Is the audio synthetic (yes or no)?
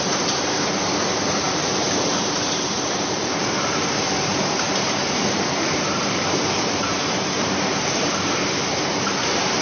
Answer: yes